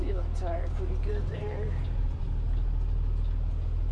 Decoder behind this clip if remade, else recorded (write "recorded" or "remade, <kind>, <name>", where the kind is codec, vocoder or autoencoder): recorded